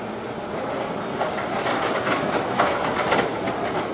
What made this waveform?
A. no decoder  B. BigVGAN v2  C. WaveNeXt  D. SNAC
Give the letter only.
A